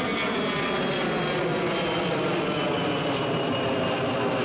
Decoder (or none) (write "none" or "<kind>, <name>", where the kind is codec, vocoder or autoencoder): none